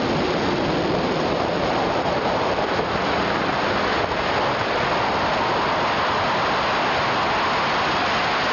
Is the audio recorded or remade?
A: recorded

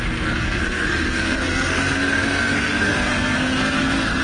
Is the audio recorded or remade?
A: remade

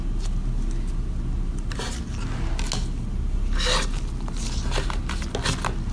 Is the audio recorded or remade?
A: recorded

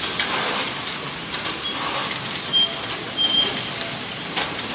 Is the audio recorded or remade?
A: recorded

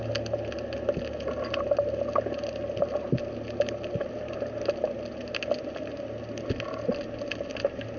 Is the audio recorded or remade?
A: recorded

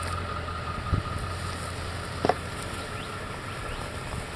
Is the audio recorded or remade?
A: recorded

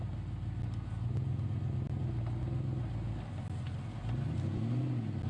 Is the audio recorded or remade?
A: recorded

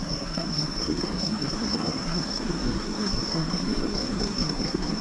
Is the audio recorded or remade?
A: remade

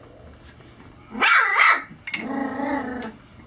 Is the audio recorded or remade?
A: recorded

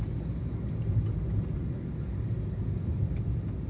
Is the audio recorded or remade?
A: recorded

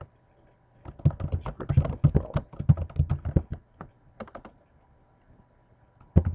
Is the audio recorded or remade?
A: recorded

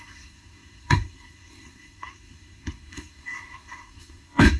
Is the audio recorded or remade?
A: remade